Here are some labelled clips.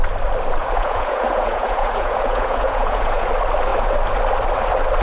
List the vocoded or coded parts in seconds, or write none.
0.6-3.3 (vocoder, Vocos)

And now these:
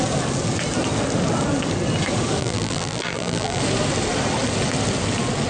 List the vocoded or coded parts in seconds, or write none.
2.4-3.6 (vocoder, BigVGAN v2)

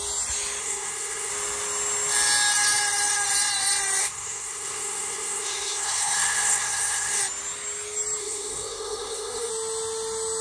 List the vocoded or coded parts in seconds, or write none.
0.6-1.3 (codec, SNAC); 4.0-7.2; 8.2-9.5

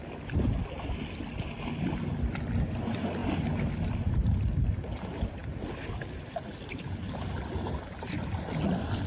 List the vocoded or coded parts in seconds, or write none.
none